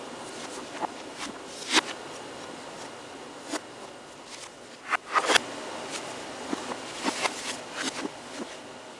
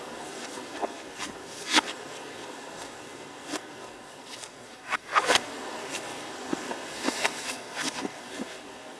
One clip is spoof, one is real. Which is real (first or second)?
first